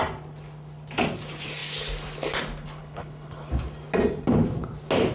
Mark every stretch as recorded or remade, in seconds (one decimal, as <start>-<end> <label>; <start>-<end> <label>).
0.0-2.8 recorded; 2.8-3.5 remade; 3.5-5.1 recorded